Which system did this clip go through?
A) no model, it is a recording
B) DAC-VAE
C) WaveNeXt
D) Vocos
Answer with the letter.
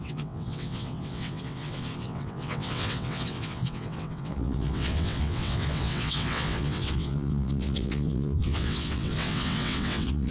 C